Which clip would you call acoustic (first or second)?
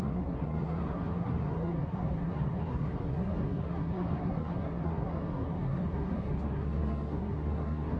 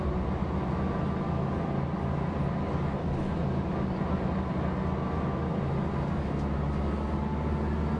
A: second